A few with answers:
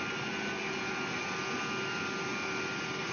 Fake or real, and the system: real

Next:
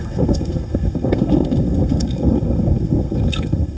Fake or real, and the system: fake, codec, SNAC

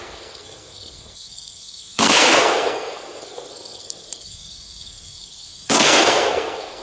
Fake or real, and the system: fake, codec, SNAC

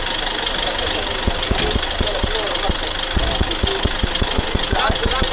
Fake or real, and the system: real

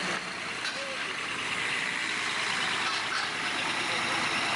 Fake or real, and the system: real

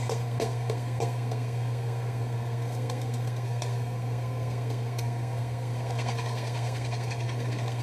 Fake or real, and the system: fake, codec, SNAC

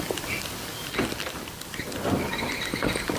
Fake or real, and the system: real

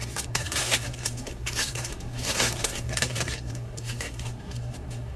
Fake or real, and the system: fake, codec, SNAC